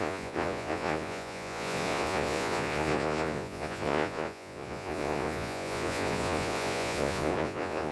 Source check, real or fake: fake